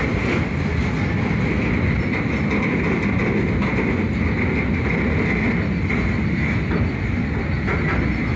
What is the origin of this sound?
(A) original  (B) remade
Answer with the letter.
A